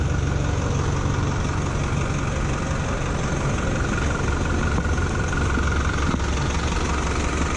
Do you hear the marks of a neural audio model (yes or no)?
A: no